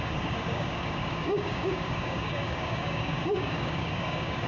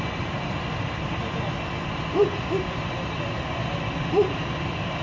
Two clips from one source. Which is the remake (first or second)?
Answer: first